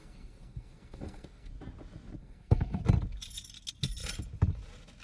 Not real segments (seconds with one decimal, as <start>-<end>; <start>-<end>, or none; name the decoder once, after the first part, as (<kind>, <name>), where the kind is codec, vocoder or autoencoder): 0.0-1.5 (codec, SNAC); 2.2-2.8